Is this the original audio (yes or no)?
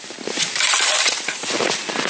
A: no